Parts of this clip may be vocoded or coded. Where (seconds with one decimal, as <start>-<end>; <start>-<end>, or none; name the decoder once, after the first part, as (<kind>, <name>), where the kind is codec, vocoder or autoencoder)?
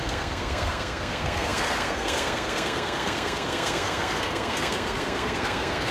0.0-5.9 (codec, SNAC)